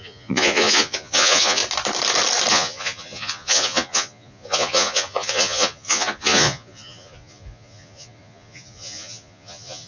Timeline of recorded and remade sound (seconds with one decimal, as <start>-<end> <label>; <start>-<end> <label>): 0.0-1.6 remade; 1.6-2.5 recorded; 2.5-9.9 remade